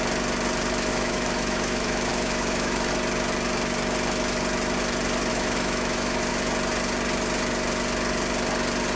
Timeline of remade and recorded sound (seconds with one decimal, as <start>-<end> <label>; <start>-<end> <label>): 0.0-0.9 recorded; 0.9-2.9 remade; 2.9-5.3 recorded; 5.3-6.3 remade; 6.3-9.0 recorded